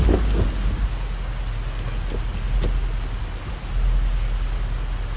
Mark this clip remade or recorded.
recorded